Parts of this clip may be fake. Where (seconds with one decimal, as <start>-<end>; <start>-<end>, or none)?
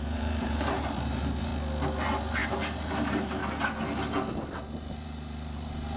0.0-1.5; 2.0-3.4; 4.6-6.0